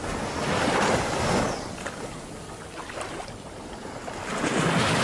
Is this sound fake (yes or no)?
no